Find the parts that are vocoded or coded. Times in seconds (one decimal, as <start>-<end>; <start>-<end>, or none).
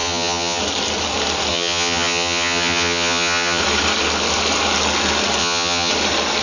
0.0-0.6; 1.5-3.6; 5.4-5.9